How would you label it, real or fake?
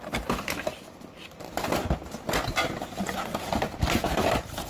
real